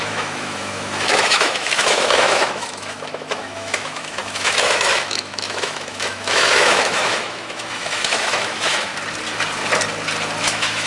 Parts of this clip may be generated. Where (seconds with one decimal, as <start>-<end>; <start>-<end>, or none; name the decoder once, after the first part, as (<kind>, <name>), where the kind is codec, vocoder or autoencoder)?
0.0-8.9 (autoencoder, DAC-VAE); 10.4-10.9